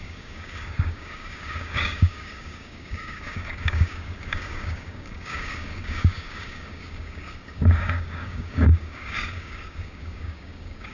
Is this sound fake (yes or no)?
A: yes